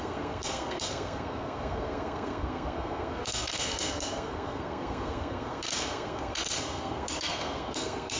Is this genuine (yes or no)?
no